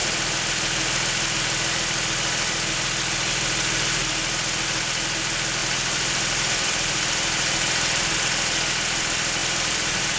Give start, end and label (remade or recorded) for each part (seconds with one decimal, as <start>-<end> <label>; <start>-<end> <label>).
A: 0.0-5.6 recorded; 5.6-8.2 remade; 8.2-9.4 recorded; 9.4-10.2 remade